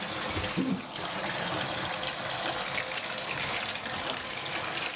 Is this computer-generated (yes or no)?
no